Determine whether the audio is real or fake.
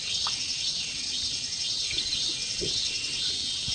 fake